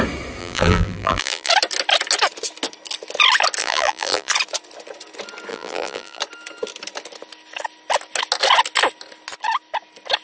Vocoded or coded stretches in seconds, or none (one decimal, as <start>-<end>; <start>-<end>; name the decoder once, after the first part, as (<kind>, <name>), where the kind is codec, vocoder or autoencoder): 0.4-1.5 (vocoder, BigVGAN v2); 3.6-4.3; 5.5-6.2